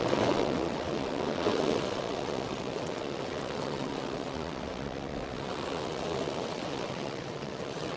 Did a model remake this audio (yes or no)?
yes